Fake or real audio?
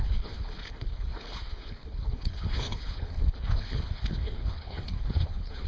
fake